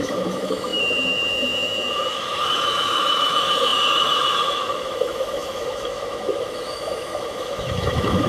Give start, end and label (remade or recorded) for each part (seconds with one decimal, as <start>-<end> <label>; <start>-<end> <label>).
0.0-8.3 remade